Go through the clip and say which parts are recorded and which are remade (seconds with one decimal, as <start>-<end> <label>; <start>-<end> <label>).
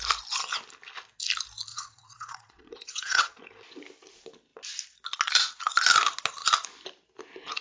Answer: 0.0-1.7 recorded; 1.7-3.4 remade; 3.4-7.6 recorded